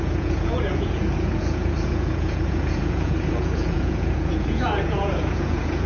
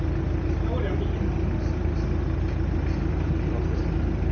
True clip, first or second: second